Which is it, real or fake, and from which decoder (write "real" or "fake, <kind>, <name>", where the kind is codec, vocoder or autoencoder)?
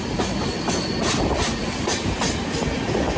real